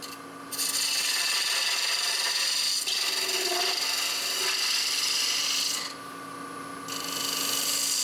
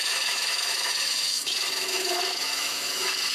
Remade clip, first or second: second